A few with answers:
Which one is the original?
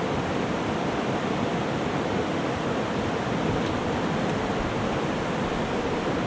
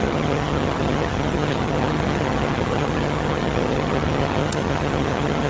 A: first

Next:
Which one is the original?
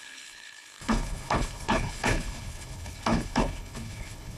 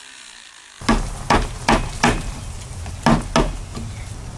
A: second